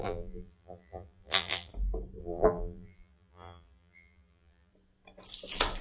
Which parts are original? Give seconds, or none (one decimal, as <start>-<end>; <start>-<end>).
1.7-2.2; 4.7-5.8